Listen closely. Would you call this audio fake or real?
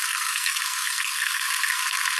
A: fake